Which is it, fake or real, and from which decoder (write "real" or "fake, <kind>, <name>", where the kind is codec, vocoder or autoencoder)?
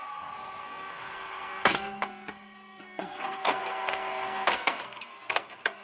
fake, codec, SNAC